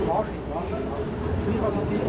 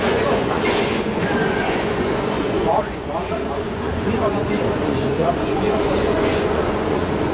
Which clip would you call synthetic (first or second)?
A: second